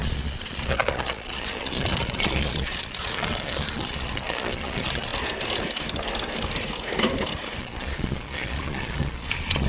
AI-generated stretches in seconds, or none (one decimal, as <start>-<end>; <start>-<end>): 0.0-5.1; 7.6-9.7